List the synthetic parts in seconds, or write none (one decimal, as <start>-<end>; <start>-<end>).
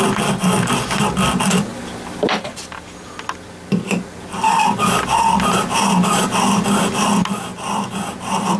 none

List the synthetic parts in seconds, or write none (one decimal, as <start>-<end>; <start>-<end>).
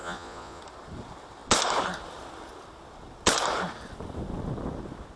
0.0-0.6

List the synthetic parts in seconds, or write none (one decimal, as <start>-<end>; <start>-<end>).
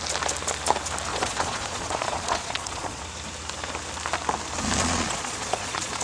1.1-3.0; 4.8-6.0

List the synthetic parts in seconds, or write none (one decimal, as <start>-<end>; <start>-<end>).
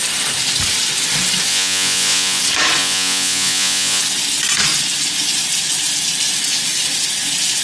1.5-2.4; 2.8-4.0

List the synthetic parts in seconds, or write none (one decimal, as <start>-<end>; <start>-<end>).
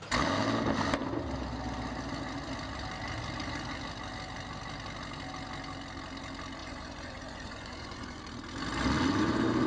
6.6-8.2